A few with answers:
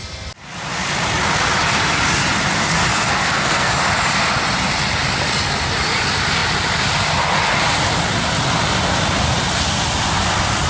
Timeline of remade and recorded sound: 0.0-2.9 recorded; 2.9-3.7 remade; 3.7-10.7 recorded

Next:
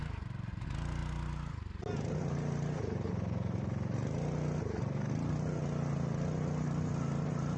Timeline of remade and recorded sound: 0.0-7.6 recorded